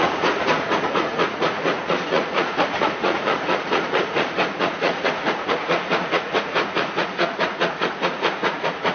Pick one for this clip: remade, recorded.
remade